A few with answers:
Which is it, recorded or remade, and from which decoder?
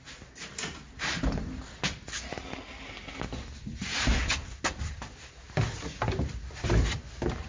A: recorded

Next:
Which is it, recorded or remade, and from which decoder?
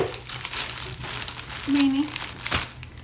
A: recorded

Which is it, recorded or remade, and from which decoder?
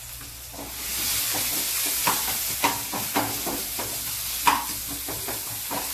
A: recorded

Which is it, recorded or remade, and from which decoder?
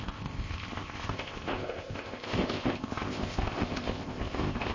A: remade, codec, ZipCodec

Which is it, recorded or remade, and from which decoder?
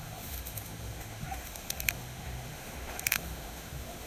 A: remade, autoencoder, DAC-VAE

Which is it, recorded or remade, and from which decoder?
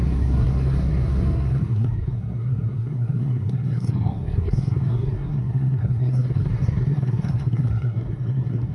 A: remade, codec, SNAC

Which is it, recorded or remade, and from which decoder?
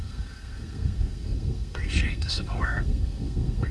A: remade, codec, SNAC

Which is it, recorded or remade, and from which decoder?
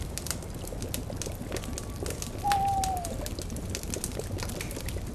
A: recorded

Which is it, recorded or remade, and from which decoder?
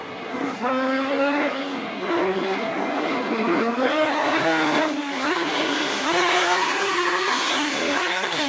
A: remade, codec, SNAC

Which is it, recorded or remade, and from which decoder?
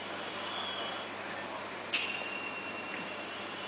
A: recorded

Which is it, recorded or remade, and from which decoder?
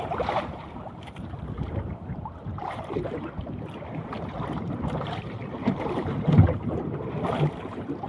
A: remade, vocoder, BigVGAN v2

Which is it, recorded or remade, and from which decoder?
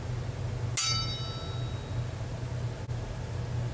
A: recorded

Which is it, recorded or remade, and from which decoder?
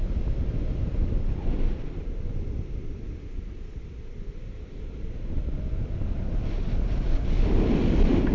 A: recorded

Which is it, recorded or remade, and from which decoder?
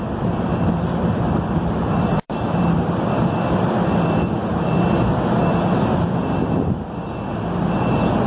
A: remade, vocoder, BigVGAN v2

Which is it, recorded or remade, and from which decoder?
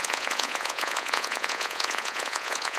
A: remade, vocoder, Vocos